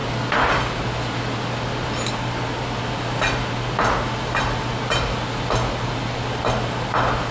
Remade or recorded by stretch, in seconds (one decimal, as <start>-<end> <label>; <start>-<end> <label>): 0.0-7.3 recorded